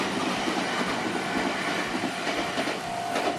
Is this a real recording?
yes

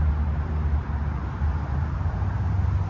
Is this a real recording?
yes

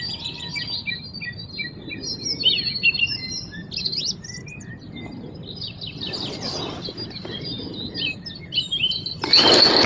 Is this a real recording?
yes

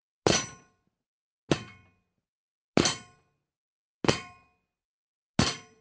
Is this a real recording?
yes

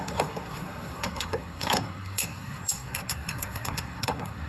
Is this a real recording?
no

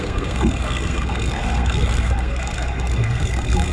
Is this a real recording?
no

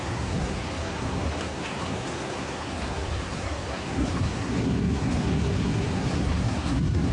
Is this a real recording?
no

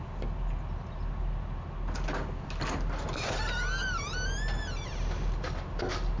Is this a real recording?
yes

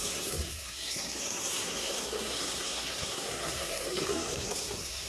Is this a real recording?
no